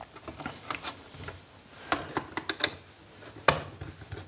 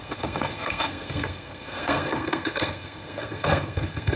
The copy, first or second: second